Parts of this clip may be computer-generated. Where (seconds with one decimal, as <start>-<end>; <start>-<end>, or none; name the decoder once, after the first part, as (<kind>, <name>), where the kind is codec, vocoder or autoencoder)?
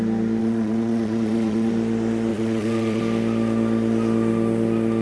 0.4-1.7 (vocoder, Vocos); 2.3-3.0